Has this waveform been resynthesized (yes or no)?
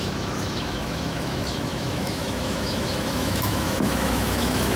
yes